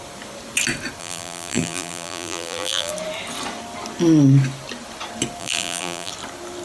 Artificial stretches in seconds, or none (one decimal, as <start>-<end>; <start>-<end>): 1.0-2.9; 5.4-6.1